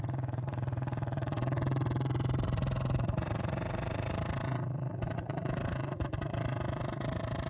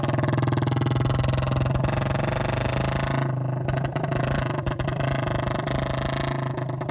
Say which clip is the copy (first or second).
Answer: first